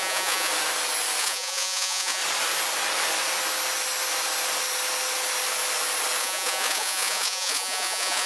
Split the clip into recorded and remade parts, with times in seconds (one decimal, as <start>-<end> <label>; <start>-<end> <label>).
0.0-0.5 remade; 0.5-1.2 recorded; 1.2-2.2 remade; 2.2-6.2 recorded; 6.2-8.3 remade